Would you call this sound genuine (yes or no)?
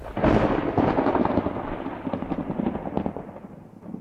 yes